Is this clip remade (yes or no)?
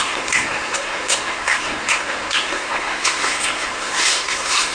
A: yes